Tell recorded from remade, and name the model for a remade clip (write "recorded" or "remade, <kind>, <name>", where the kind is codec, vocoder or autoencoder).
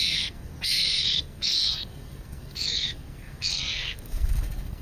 remade, codec, SNAC